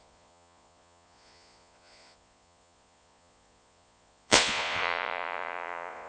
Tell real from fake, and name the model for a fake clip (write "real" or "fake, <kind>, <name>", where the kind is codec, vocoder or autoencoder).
fake, vocoder, Vocos